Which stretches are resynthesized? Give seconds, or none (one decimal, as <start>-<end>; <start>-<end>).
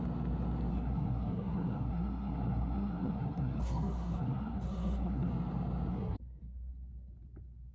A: 0.7-5.3; 5.9-6.7